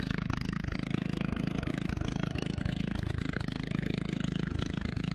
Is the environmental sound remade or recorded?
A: remade